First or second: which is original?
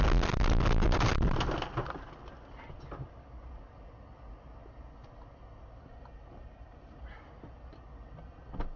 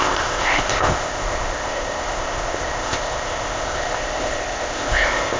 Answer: first